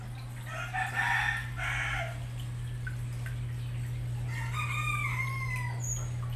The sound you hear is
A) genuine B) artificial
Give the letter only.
A